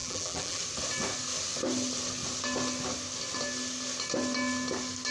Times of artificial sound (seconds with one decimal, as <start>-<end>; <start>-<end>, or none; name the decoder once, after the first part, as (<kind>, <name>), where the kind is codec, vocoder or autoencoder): 0.0-0.6 (vocoder, BigVGAN v2)